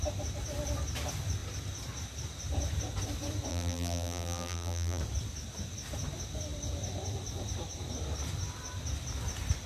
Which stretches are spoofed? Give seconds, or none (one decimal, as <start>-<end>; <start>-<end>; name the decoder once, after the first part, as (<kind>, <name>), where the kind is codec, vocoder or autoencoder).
3.5-5.0 (vocoder, BigVGAN v2)